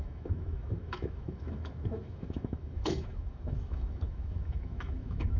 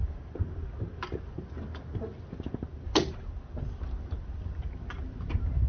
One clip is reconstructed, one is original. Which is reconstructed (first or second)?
first